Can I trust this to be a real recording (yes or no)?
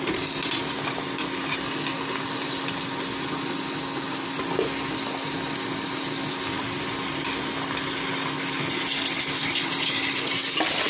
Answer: yes